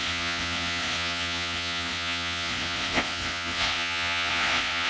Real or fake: fake